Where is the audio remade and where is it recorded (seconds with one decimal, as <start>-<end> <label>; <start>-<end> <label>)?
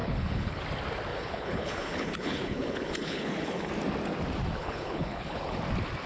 0.0-0.6 remade; 0.6-1.1 recorded; 1.1-3.7 remade; 3.7-4.6 recorded; 4.6-5.6 remade; 5.6-6.1 recorded